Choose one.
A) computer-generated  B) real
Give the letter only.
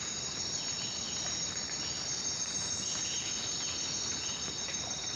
B